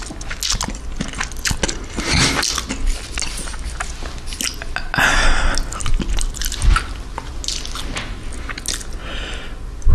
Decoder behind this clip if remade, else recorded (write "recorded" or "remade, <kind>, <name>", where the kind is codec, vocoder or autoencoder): recorded